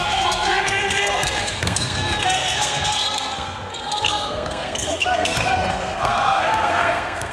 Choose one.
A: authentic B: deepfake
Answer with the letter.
B